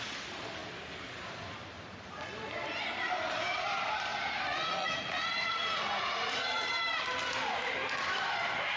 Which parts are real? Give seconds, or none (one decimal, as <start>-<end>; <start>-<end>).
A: 0.0-4.1; 6.7-8.8